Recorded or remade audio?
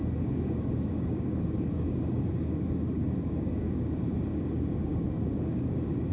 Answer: remade